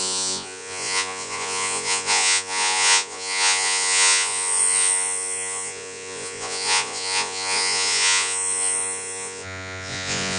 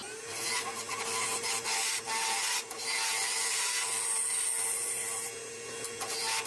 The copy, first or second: first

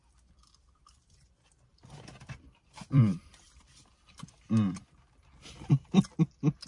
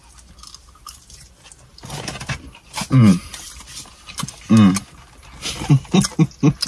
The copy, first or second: first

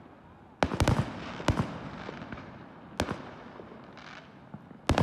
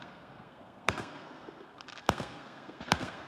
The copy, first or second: second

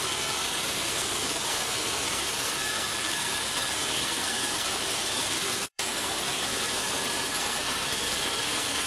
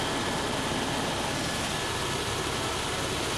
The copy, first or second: first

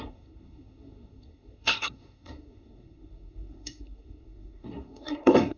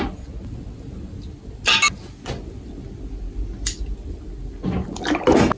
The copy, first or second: first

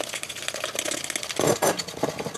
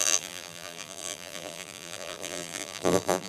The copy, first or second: second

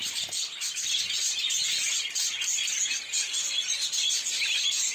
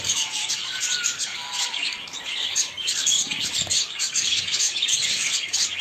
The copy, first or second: second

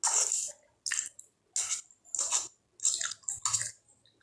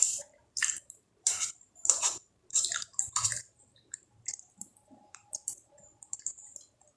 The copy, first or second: second